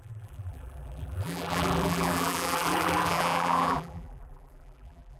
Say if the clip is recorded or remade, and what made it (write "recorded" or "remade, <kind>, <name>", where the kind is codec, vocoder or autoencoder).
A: remade, vocoder, BigVGAN v2